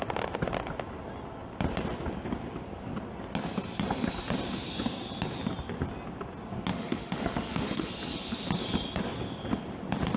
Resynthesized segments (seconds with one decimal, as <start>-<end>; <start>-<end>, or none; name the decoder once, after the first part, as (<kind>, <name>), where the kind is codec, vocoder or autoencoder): 6.7-7.9 (autoencoder, DAC-VAE)